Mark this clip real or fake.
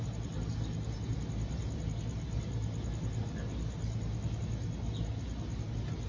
real